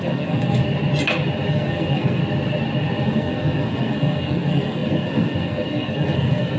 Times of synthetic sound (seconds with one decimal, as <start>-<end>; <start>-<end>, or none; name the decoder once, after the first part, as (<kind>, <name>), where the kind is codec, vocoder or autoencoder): 0.0-0.6 (codec, SNAC); 1.5-2.2; 3.0-6.6